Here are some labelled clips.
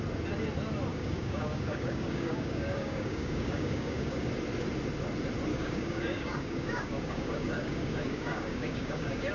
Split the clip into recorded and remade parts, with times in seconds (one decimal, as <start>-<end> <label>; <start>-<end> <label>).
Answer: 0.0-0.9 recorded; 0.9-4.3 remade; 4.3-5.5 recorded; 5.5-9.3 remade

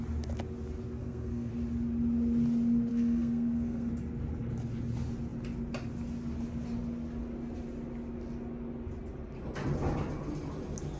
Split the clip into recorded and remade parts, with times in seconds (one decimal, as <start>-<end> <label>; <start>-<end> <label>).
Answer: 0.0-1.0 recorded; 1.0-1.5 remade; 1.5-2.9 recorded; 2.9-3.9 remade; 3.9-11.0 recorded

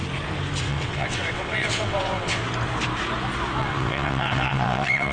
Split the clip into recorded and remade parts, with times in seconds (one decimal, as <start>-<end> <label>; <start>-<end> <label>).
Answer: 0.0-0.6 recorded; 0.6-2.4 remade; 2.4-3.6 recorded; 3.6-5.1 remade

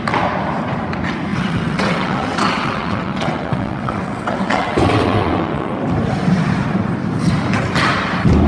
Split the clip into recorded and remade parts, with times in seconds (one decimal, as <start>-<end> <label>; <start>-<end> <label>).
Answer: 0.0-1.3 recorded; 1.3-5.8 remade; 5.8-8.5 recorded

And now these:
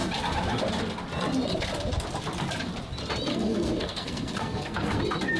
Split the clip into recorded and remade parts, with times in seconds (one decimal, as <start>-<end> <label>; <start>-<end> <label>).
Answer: 0.0-3.3 recorded; 3.3-5.0 remade; 5.0-5.4 recorded

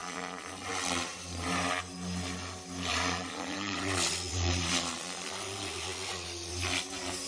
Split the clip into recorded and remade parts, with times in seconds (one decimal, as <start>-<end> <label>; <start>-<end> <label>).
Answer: 0.0-0.7 remade; 0.7-2.9 recorded; 2.9-6.5 remade; 6.5-7.3 recorded